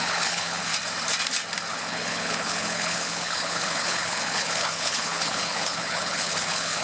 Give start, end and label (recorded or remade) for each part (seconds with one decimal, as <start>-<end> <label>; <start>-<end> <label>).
0.0-0.7 remade; 0.7-1.7 recorded; 1.7-6.8 remade